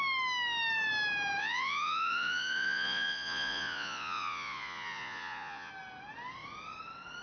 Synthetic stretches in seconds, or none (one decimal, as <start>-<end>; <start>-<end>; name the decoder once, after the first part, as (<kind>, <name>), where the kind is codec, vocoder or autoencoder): 1.4-5.7 (vocoder, Vocos)